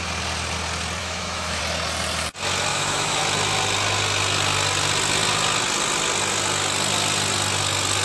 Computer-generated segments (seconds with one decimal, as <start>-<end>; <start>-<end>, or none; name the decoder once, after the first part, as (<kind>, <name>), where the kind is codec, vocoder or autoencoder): 1.0-1.6 (autoencoder, DAC-VAE); 2.7-3.2